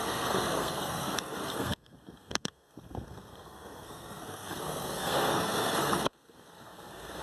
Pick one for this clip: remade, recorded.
remade